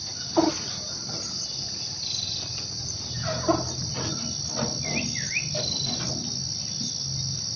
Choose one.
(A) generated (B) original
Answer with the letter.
B